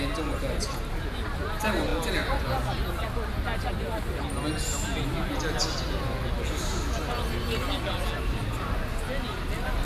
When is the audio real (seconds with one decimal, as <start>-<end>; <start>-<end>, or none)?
0.0-9.8